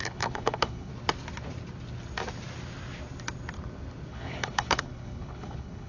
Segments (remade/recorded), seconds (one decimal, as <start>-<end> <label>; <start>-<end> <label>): 0.0-0.9 remade; 0.9-4.1 recorded; 4.1-5.9 remade